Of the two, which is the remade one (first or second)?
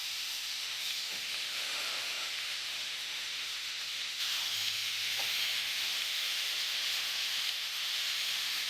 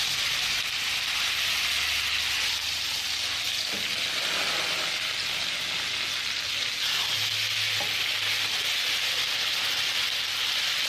first